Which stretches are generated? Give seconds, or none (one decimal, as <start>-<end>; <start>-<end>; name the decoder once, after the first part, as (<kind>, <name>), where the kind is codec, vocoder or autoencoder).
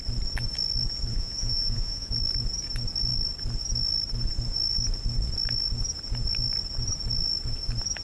1.1-2.1 (vocoder, Vocos)